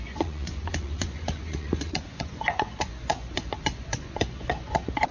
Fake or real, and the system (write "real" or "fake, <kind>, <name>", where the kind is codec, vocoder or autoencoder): fake, vocoder, Vocos